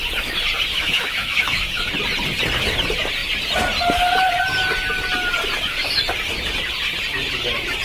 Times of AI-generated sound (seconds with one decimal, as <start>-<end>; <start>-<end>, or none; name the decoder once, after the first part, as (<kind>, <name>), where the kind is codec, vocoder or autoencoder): 0.7-1.9 (autoencoder, DAC-VAE)